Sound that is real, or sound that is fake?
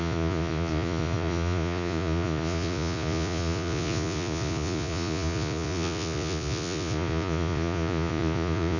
fake